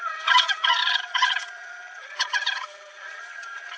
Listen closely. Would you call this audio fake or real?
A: fake